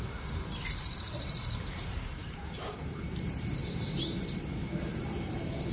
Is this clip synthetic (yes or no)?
yes